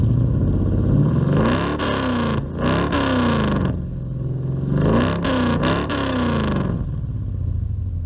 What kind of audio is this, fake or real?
real